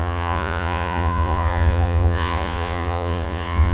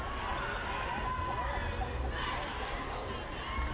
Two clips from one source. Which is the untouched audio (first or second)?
second